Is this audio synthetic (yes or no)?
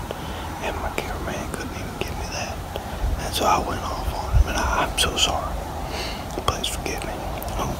yes